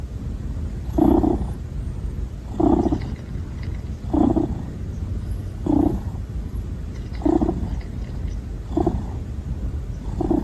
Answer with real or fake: real